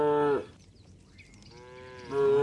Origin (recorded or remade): recorded